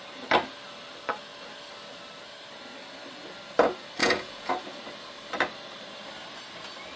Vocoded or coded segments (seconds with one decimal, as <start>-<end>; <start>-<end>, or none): 4.0-4.5